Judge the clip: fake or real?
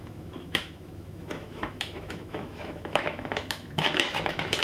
fake